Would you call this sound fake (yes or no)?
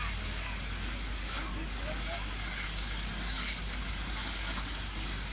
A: yes